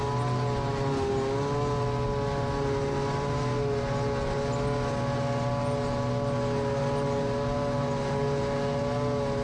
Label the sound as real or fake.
real